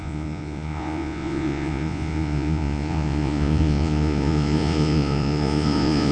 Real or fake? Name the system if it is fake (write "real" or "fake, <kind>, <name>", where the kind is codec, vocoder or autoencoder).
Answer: fake, vocoder, Vocos